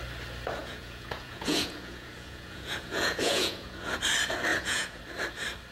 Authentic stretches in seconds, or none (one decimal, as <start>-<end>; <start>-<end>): 0.0-0.6; 4.0-4.5; 5.0-5.7